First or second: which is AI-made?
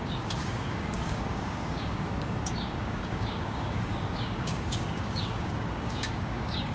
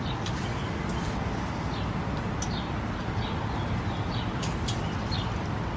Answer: first